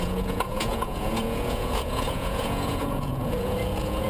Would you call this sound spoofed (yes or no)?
yes